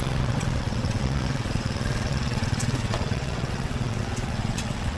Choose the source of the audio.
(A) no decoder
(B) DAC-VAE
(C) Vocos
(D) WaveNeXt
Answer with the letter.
D